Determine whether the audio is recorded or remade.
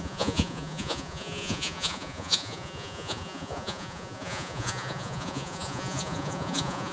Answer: remade